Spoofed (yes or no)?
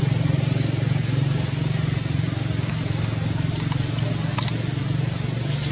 no